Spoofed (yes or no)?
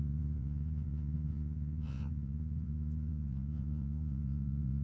yes